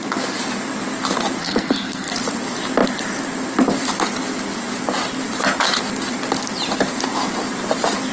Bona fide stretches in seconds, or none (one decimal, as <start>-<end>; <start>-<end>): 0.0-1.4; 2.1-8.1